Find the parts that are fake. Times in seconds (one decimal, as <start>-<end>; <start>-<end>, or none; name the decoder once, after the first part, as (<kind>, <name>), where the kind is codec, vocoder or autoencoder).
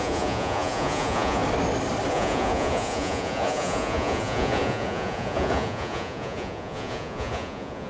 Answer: 0.0-1.4 (vocoder, Vocos); 2.1-7.9